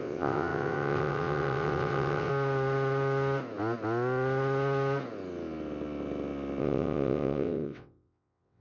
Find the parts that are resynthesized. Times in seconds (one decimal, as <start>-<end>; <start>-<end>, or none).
0.0-2.3; 6.6-8.6